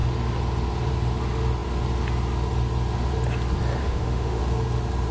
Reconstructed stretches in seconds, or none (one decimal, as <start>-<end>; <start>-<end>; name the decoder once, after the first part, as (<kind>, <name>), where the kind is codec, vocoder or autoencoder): 3.8-4.4 (autoencoder, DAC-VAE)